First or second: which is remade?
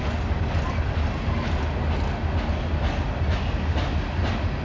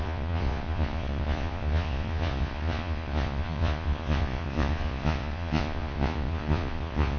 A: second